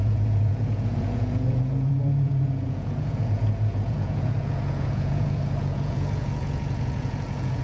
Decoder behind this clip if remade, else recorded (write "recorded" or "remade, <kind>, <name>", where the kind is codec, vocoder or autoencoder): remade, vocoder, Vocos